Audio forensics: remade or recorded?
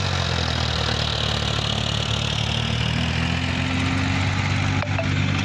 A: recorded